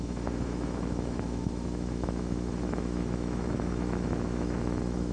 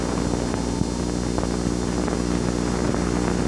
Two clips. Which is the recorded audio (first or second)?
second